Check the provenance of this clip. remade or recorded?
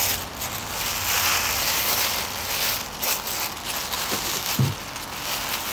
recorded